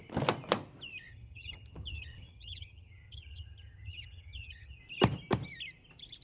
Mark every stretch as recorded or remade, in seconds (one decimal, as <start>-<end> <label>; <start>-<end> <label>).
0.0-1.1 recorded; 1.1-4.8 remade; 4.8-6.2 recorded